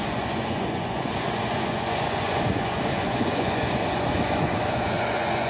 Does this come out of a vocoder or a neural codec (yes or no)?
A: yes